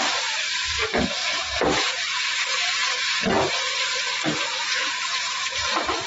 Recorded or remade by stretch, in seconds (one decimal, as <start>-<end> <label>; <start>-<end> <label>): 0.0-1.2 recorded; 1.2-2.0 remade; 2.0-4.6 recorded; 4.6-5.6 remade; 5.6-6.1 recorded